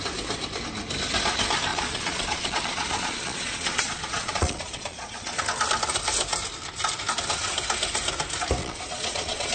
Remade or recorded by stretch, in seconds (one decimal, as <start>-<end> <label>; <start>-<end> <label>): 0.0-1.7 recorded; 1.7-5.4 remade; 5.4-8.6 recorded; 8.6-9.5 remade